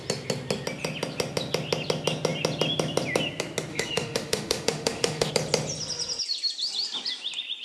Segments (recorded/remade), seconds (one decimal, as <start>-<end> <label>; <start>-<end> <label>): 0.0-3.7 recorded; 3.7-5.3 remade; 5.3-7.6 recorded